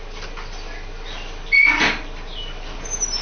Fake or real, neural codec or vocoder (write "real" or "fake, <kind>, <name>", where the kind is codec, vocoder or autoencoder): real